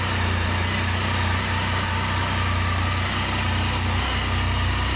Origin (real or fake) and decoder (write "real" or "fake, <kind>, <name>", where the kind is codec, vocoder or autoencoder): real